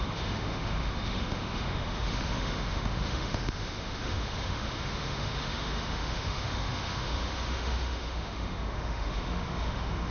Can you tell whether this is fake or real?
fake